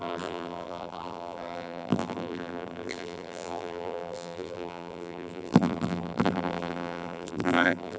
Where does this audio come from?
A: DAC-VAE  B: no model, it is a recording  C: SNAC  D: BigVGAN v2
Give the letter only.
D